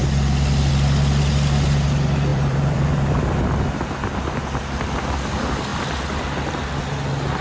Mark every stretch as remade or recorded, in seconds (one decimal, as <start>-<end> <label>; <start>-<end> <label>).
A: 0.0-2.3 recorded; 2.3-3.3 remade; 3.3-7.4 recorded